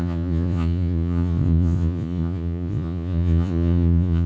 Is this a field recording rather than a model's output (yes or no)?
no